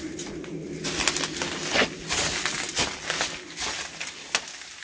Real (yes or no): yes